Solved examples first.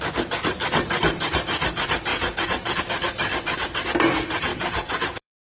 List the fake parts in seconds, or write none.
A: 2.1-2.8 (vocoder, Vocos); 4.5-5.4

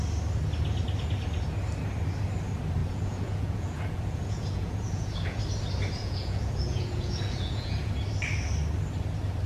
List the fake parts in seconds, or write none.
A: 2.8-5.4 (vocoder, Vocos); 6.0-7.9

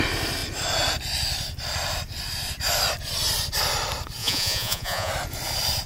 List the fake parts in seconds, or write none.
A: 4.2-5.1 (vocoder, Vocos)

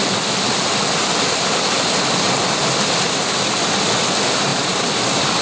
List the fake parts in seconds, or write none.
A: none

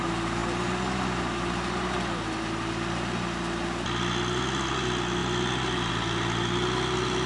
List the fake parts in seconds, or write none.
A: none

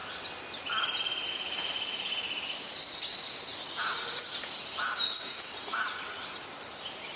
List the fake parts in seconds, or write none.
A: none

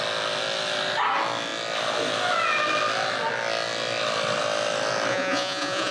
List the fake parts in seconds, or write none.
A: 5.1-5.9 (vocoder, Vocos)